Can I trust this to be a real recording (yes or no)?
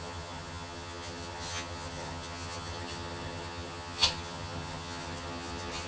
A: no